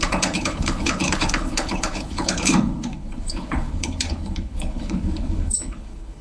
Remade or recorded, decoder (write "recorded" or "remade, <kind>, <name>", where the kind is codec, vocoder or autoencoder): remade, codec, HILCodec